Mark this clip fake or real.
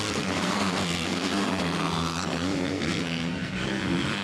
fake